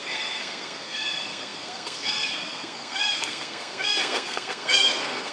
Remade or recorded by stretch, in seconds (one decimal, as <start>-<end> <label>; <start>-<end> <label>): 0.0-5.3 remade